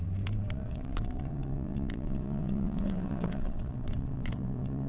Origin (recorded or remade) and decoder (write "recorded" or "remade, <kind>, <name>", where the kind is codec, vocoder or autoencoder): remade, vocoder, WaveNeXt